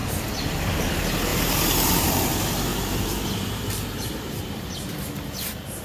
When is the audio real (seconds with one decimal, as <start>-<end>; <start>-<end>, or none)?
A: 0.9-1.3; 2.3-2.7